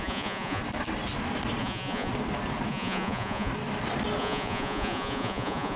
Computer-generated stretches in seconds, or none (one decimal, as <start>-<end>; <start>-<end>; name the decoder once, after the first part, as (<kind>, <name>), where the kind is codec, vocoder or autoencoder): 0.0-0.6 (vocoder, Vocos); 1.6-2.1; 2.7-3.5; 4.2-5.8